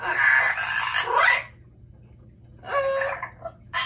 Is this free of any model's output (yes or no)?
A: yes